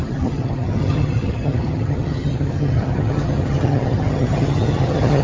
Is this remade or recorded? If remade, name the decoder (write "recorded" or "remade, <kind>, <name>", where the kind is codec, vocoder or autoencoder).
remade, vocoder, HiFi-GAN